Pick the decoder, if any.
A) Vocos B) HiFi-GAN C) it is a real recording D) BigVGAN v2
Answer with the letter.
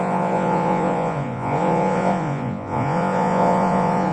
A